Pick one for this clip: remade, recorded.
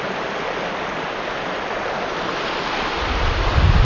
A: recorded